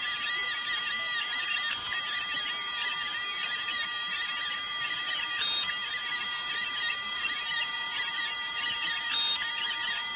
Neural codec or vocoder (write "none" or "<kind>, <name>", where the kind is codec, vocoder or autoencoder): vocoder, BigVGAN v2